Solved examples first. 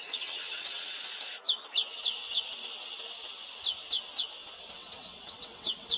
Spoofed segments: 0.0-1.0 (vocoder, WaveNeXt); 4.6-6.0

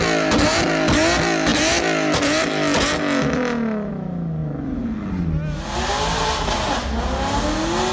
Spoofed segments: none

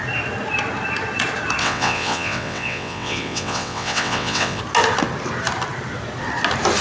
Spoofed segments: 1.6-4.6 (vocoder, WaveNeXt)